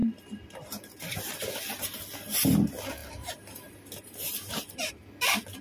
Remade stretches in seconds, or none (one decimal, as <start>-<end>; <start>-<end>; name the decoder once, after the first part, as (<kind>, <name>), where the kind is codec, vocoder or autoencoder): 0.0-2.0 (vocoder, BigVGAN v2); 3.0-4.9